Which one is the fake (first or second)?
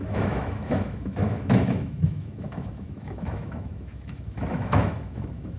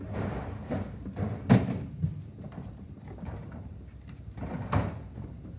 first